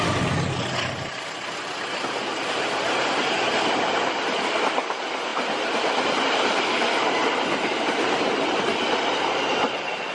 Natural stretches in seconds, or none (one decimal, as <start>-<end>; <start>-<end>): 0.0-10.1